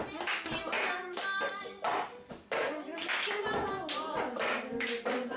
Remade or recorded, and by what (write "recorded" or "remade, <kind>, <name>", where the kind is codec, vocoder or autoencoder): recorded